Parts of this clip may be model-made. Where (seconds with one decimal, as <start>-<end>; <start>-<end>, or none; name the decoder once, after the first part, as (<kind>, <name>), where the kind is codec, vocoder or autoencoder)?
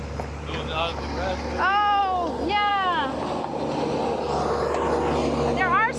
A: none